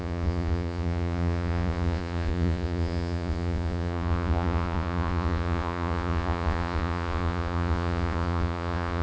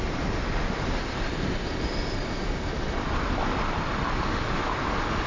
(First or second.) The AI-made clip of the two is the first